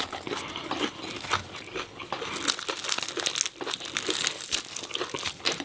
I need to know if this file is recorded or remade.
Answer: recorded